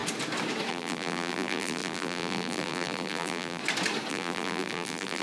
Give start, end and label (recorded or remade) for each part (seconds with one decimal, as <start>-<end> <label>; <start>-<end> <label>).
0.0-0.7 recorded; 0.7-3.6 remade; 3.6-4.1 recorded; 4.1-5.2 remade